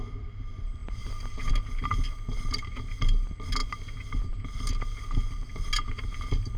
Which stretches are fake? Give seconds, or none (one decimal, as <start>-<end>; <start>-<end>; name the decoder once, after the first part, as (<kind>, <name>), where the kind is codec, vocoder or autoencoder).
0.8-1.5 (vocoder, BigVGAN v2)